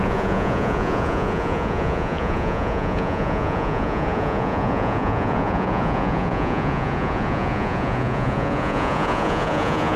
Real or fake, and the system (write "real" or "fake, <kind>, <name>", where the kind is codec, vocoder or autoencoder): fake, vocoder, Vocos